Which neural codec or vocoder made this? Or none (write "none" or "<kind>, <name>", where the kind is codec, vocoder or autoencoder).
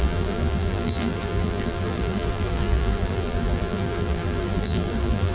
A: vocoder, BigVGAN v2